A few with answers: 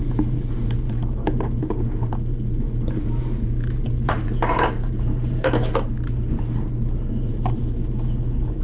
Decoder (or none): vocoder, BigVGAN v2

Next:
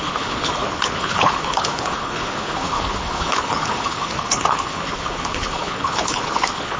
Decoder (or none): codec, HILCodec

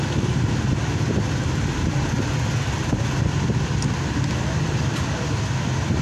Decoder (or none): none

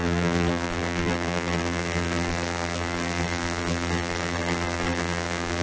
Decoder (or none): vocoder, BigVGAN v2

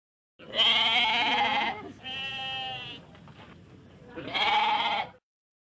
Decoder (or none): none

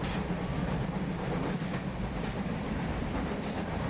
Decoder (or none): vocoder, BigVGAN v2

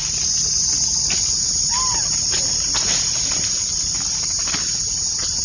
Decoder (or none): none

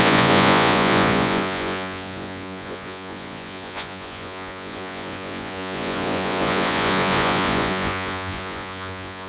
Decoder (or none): vocoder, Vocos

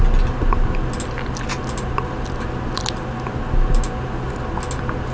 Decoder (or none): none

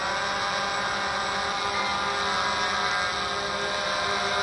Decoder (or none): none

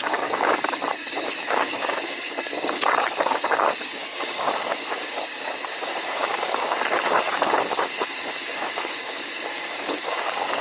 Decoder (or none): codec, DAC